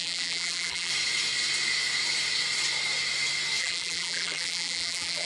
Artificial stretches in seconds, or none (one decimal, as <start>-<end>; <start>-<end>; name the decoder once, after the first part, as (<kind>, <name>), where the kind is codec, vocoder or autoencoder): 0.0-0.9 (vocoder, BigVGAN v2); 3.6-5.2